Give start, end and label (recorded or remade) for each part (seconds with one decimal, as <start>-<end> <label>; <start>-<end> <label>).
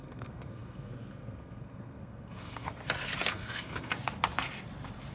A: 0.0-2.8 remade; 2.8-3.3 recorded; 3.3-3.9 remade; 3.9-5.1 recorded